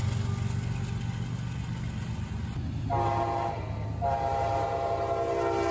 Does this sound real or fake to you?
real